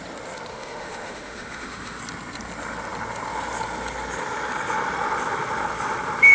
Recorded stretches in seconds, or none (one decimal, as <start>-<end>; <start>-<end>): 0.0-0.5; 2.0-6.3